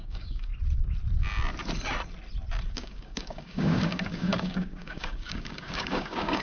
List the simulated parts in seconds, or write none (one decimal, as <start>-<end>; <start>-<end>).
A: 0.0-0.5; 2.7-6.4